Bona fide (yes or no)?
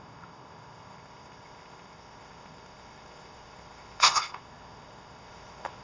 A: no